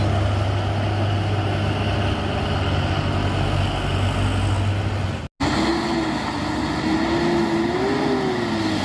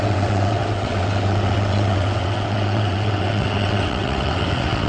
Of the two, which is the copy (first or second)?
second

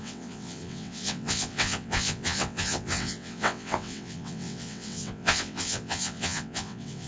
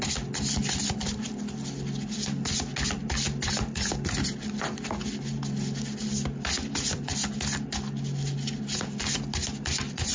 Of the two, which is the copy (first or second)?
first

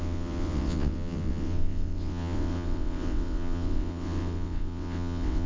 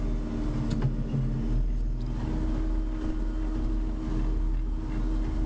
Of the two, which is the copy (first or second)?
first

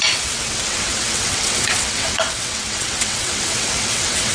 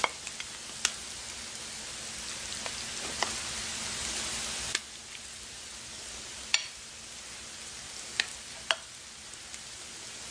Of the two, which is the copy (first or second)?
first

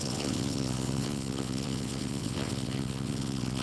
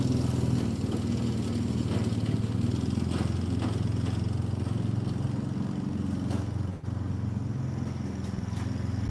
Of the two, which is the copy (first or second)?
first